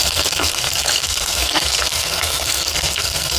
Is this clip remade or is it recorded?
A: remade